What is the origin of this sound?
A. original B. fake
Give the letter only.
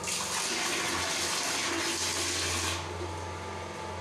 A